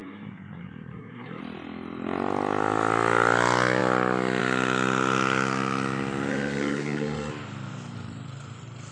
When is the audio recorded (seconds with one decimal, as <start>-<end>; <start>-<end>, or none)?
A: 1.4-6.3; 7.3-8.9